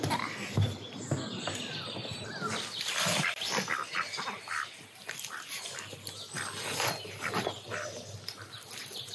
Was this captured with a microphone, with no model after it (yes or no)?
yes